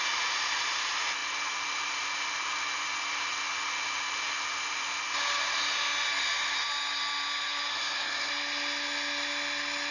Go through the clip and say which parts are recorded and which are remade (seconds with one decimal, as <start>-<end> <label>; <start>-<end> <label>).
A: 0.0-7.7 recorded; 7.7-8.3 remade; 8.3-9.9 recorded